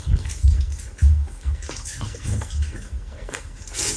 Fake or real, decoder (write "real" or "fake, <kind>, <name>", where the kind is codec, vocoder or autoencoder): fake, codec, SNAC